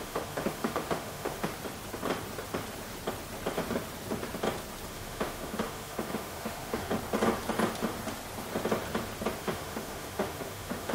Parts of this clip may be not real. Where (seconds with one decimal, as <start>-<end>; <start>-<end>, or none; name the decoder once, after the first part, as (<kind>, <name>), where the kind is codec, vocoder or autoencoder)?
0.0-1.5 (autoencoder, DAC-VAE); 4.9-6.9; 9.4-10.9